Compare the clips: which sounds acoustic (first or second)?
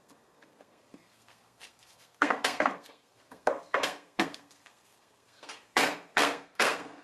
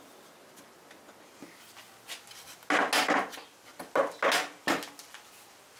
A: second